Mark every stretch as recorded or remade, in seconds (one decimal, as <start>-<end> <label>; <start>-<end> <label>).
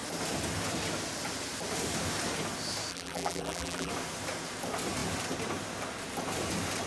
0.0-2.9 recorded; 2.9-3.9 remade; 3.9-6.9 recorded